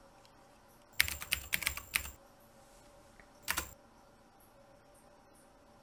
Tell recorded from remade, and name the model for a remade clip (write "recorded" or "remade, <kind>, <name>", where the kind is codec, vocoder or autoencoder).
recorded